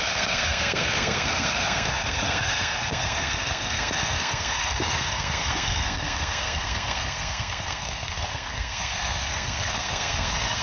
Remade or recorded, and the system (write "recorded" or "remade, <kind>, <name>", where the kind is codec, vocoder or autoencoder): remade, codec, SNAC